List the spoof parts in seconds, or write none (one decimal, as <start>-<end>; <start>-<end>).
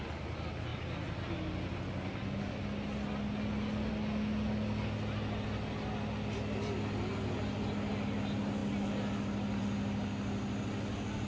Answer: none